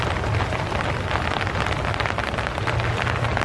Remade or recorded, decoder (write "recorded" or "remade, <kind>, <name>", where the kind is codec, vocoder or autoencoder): recorded